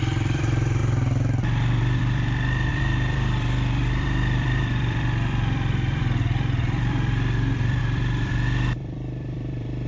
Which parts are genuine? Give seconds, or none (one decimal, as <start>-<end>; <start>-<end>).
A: 0.8-1.8